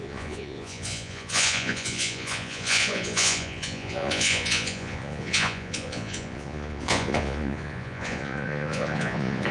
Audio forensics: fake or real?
fake